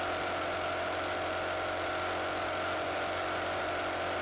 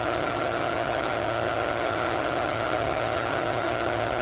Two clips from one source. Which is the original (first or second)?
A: first